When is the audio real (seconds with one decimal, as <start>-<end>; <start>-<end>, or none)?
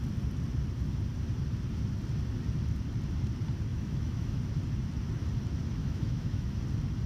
0.0-3.7; 4.4-5.8; 6.6-7.1